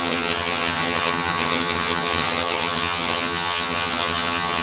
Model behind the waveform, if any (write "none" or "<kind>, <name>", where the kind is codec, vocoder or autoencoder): vocoder, HiFi-GAN